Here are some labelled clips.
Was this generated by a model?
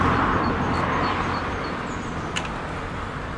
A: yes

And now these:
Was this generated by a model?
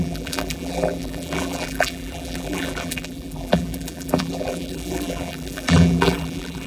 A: yes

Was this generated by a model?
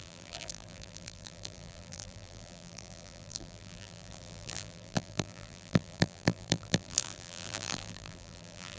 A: yes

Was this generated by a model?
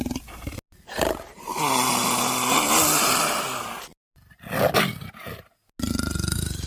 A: no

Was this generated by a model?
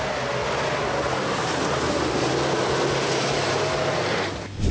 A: no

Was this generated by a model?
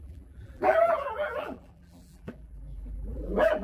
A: yes